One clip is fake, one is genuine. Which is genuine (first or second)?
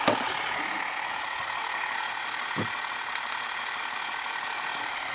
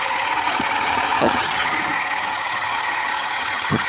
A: first